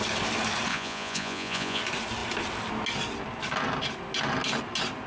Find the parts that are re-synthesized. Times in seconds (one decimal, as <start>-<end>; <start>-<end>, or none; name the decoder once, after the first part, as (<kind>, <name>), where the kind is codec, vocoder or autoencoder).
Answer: 0.7-1.8 (vocoder, Vocos)